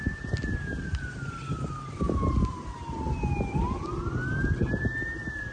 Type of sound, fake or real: real